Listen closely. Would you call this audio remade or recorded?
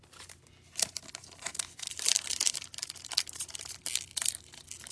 recorded